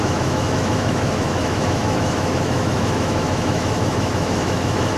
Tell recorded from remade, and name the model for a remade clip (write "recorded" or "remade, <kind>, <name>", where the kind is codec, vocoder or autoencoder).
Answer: remade, autoencoder, DAC-VAE